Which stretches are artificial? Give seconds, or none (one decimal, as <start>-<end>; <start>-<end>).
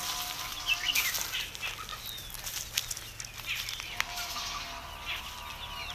0.5-1.1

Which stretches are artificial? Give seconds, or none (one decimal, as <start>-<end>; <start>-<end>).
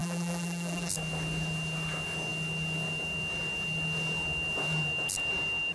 0.0-0.9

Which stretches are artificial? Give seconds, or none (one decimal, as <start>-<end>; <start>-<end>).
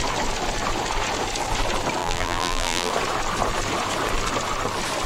2.0-2.9